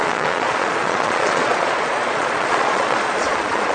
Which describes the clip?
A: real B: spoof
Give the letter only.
B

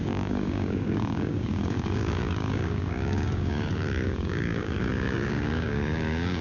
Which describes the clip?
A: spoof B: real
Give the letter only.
A